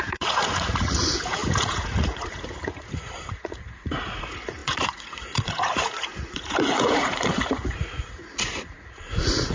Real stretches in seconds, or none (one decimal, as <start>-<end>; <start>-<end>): none